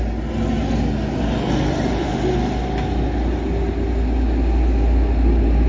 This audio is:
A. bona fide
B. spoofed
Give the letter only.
A